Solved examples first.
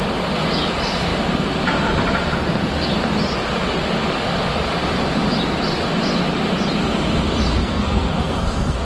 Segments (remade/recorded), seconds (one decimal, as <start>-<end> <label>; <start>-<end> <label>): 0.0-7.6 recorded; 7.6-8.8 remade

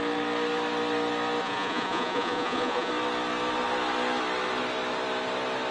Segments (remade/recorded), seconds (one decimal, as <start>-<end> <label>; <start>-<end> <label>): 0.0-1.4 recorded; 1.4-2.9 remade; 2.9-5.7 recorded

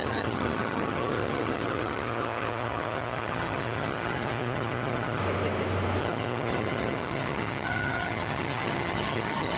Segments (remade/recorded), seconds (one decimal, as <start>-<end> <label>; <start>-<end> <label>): 0.0-5.2 remade; 5.2-6.0 recorded; 6.0-9.6 remade

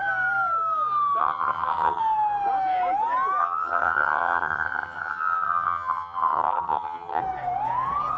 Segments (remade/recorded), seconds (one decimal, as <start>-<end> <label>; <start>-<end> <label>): 0.0-1.2 recorded; 1.2-2.0 remade; 2.0-3.4 recorded; 3.4-7.2 remade; 7.2-8.2 recorded

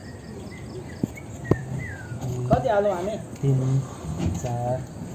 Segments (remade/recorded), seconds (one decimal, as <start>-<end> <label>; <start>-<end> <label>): 0.0-5.1 recorded